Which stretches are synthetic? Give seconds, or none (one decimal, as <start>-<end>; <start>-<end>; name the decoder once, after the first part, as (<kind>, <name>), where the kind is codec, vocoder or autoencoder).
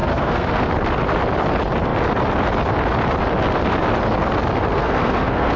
0.0-0.7 (codec, SNAC); 4.7-5.6